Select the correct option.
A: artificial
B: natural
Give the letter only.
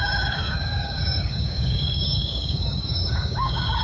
A